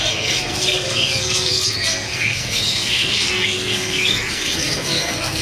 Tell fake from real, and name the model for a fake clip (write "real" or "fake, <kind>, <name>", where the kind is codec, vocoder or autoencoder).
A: fake, codec, SNAC